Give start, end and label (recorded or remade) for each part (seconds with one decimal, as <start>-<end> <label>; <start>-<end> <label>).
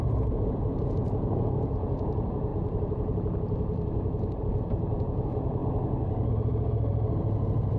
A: 0.0-5.6 remade; 5.6-6.3 recorded; 6.3-7.8 remade